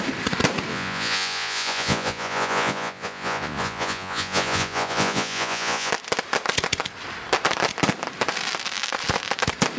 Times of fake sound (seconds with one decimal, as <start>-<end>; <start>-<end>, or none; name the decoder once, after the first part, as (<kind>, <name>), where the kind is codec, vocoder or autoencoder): 0.7-5.9 (vocoder, Vocos)